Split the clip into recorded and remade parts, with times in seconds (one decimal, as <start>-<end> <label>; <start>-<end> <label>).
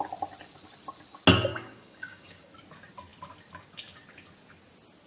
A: 0.0-1.5 recorded; 1.5-2.5 remade; 2.5-5.1 recorded